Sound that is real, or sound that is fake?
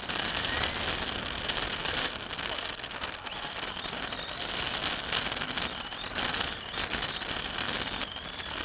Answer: real